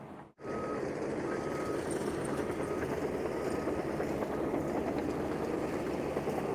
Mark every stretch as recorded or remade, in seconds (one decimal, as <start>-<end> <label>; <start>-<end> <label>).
0.0-6.5 recorded